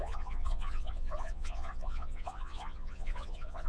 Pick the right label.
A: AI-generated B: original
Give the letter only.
A